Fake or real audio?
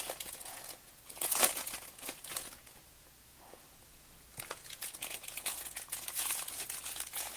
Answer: fake